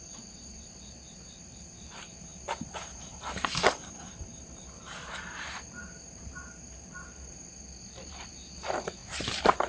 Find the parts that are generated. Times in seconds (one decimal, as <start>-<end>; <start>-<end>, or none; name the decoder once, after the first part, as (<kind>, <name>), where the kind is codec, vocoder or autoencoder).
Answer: 0.0-9.7 (vocoder, BigVGAN v2)